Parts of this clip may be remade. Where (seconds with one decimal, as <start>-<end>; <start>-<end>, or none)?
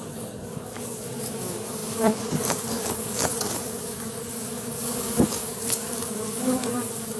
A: 0.0-7.2